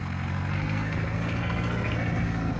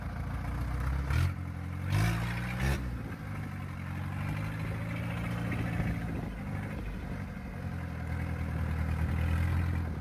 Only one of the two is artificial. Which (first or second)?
first